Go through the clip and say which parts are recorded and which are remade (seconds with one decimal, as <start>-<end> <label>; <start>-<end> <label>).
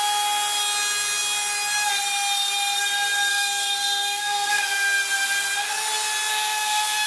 0.0-3.3 recorded; 3.3-4.7 remade; 4.7-6.3 recorded; 6.3-7.1 remade